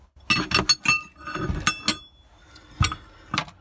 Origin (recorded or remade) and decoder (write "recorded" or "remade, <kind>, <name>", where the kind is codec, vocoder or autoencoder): recorded